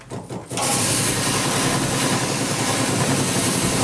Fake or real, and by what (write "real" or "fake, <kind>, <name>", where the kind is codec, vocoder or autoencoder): real